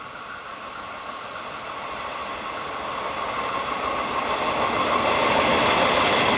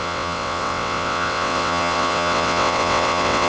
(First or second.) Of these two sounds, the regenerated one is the second